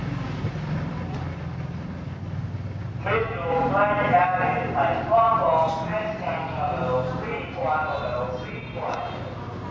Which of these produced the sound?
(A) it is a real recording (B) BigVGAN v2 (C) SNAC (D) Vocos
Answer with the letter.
A